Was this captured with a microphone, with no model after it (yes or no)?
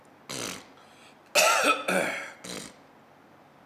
yes